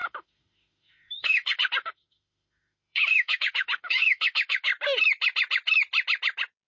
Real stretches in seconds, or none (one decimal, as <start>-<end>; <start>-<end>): 4.7-6.7